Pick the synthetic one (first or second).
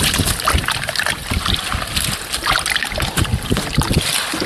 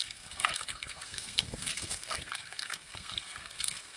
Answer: second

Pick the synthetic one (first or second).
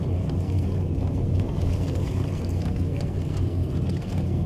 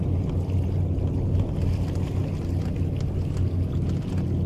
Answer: first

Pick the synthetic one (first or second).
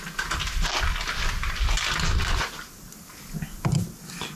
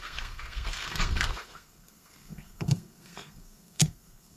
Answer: second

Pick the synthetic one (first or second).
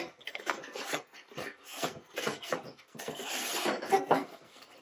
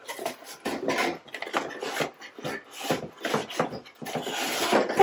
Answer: first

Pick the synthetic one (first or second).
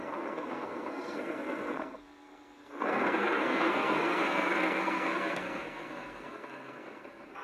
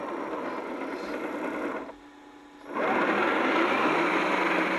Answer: first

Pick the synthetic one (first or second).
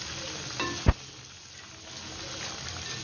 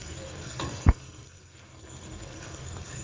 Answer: second